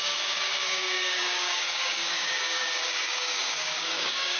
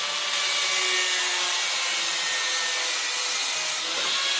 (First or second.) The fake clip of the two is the first